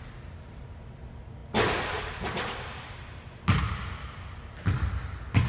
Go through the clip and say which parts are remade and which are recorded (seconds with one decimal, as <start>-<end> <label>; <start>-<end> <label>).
0.0-5.5 recorded